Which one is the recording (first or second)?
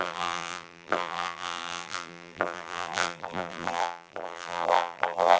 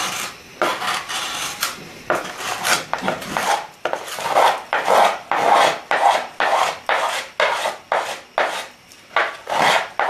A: second